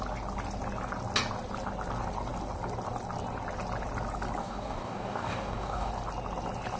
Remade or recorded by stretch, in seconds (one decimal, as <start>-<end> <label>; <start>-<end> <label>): 0.0-4.4 recorded; 4.4-5.9 remade; 5.9-6.8 recorded